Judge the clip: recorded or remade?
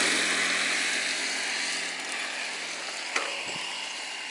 recorded